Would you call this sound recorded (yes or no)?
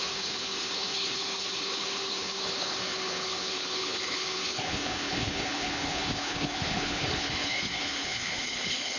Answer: no